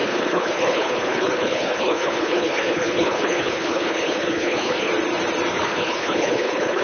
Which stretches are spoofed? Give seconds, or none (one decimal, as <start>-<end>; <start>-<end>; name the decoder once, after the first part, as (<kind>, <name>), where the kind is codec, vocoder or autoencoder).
0.0-4.9 (codec, HILCodec); 5.5-6.8